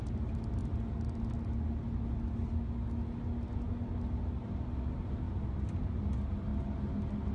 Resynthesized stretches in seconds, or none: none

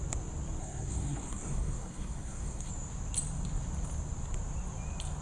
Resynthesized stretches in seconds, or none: 0.6-2.7 (codec, SNAC)

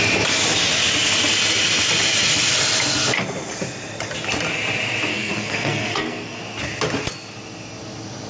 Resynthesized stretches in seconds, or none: 5.1-6.4 (codec, SNAC)

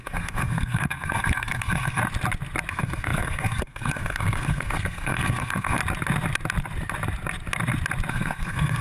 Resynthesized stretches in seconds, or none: 0.0-2.0 (codec, SNAC); 2.7-5.8; 8.1-8.8